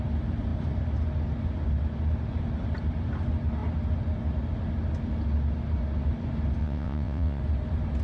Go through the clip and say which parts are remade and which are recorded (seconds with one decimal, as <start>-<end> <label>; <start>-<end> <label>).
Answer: 0.0-6.6 recorded; 6.6-7.4 remade; 7.4-8.0 recorded